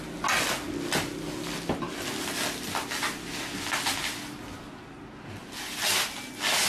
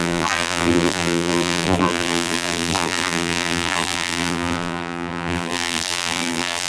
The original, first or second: first